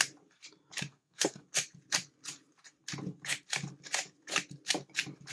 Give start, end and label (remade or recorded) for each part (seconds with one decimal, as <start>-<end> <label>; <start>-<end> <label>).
0.0-0.9 recorded; 0.9-1.4 remade; 1.4-5.3 recorded